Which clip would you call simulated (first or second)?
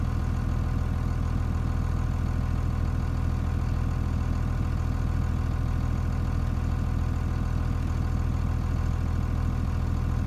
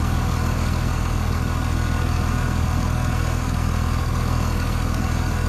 second